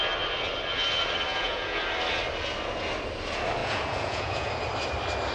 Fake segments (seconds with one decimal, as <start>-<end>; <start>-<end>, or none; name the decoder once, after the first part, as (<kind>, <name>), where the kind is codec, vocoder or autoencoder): 1.3-1.8 (vocoder, Vocos); 3.6-4.5